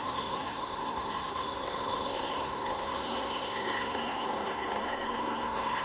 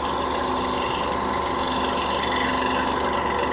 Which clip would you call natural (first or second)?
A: second